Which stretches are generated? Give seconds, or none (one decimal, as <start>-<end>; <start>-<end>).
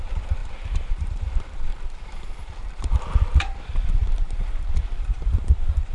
0.0-5.9